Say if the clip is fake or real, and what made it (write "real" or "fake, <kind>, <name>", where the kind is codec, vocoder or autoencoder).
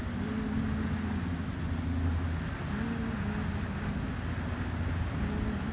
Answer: real